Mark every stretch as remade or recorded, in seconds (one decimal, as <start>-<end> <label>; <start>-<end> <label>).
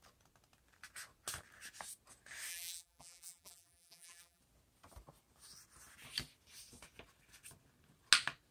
0.0-2.5 recorded; 2.5-4.4 remade; 4.4-8.5 recorded